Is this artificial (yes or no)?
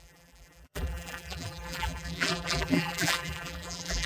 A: yes